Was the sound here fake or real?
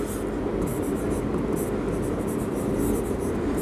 real